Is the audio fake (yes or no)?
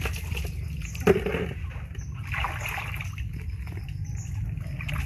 no